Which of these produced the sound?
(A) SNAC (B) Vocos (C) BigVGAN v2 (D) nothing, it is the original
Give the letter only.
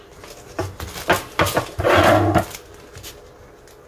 D